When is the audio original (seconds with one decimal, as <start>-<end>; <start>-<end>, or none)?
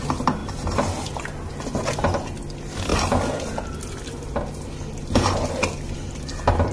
0.0-6.7